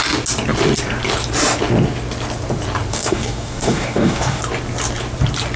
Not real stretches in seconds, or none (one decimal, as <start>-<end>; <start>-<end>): 2.9-4.4